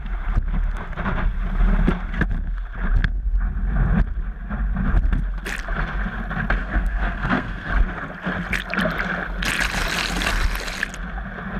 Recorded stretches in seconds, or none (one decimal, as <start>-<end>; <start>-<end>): 0.0-6.6; 7.7-11.6